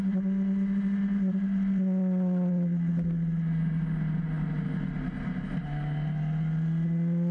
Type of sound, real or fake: real